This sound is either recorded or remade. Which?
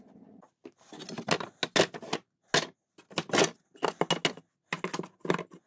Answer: recorded